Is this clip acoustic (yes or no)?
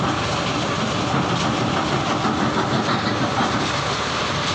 yes